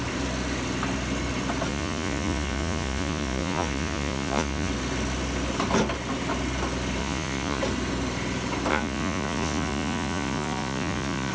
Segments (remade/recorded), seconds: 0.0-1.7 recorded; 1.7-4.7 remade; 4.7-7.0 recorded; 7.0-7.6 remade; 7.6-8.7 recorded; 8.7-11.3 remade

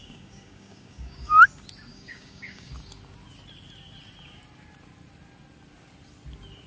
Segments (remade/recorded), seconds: 0.0-1.4 remade; 1.4-1.9 recorded; 1.9-2.7 remade; 2.7-6.7 recorded